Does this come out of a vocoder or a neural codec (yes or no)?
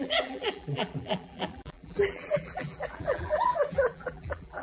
yes